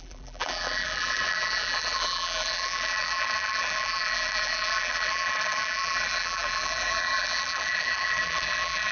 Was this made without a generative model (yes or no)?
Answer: no